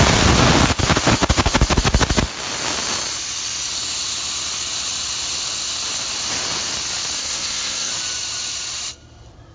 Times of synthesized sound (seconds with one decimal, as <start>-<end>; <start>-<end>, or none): 7.2-7.9

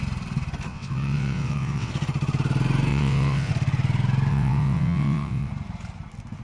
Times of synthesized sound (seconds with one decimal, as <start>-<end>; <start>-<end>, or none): 0.7-1.9; 2.9-3.5; 4.3-5.5